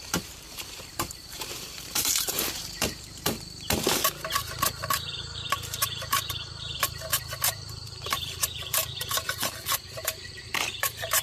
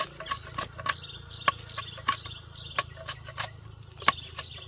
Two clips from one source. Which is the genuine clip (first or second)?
second